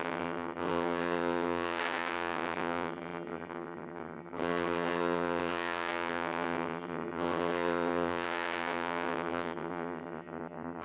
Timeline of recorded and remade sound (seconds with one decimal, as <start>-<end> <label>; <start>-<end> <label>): 0.0-10.8 remade